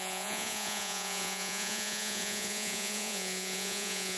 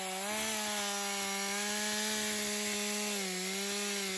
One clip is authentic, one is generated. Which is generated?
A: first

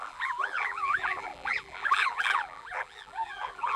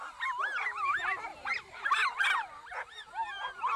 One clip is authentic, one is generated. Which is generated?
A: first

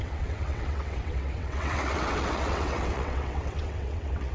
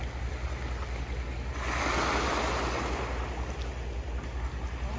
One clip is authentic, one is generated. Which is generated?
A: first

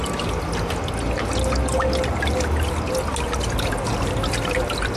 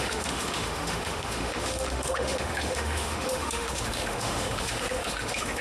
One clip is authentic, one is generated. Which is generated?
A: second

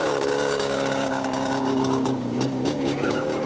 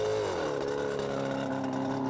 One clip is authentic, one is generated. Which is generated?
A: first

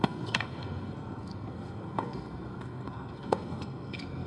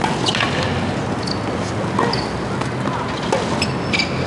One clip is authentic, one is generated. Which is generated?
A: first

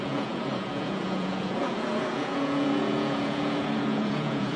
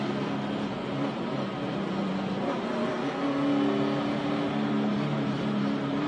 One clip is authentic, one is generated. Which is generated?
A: first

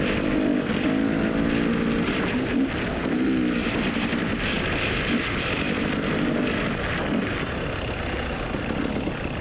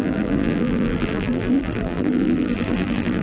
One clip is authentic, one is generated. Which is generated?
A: second